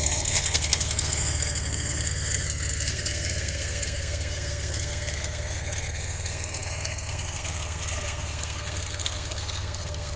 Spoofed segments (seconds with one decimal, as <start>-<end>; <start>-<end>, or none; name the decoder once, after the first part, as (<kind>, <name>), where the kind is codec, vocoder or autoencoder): 0.0-10.2 (codec, SNAC)